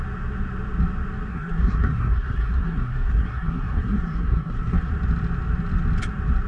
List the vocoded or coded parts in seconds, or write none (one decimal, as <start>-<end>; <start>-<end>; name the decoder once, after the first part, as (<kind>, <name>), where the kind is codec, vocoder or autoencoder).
1.3-4.9 (codec, SNAC)